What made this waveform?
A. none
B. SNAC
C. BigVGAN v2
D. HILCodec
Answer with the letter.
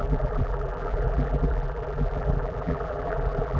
C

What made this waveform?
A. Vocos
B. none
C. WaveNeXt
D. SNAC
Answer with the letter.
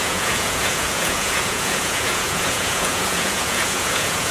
A